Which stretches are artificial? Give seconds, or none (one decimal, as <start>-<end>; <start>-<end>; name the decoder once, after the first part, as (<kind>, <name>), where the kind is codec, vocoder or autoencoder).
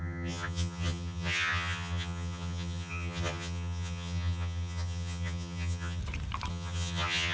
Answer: 0.0-6.0 (vocoder, HiFi-GAN); 6.5-7.3